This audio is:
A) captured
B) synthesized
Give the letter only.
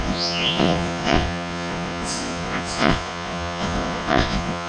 B